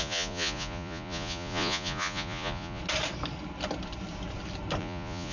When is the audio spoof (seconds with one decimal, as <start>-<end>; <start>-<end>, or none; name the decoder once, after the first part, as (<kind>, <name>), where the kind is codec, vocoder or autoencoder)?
0.0-2.8 (vocoder, Vocos); 4.8-5.3